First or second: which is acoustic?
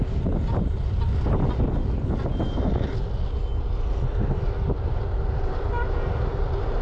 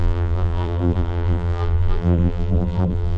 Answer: first